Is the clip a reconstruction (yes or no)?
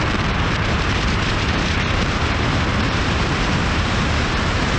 yes